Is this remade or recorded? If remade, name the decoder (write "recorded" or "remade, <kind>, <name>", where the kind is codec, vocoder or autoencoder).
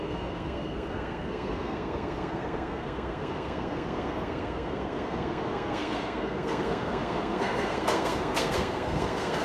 remade, codec, SNAC